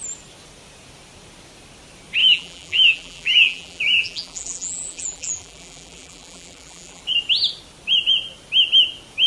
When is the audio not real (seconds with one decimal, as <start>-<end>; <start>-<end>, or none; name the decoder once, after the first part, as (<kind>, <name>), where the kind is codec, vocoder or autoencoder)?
2.2-7.0 (vocoder, BigVGAN v2)